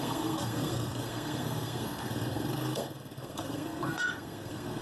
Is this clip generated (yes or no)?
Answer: yes